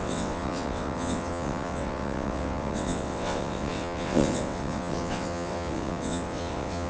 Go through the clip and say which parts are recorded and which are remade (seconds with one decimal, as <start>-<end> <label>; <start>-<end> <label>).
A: 0.0-6.9 remade